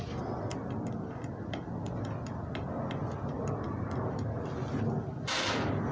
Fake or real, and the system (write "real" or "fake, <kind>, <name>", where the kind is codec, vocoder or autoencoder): real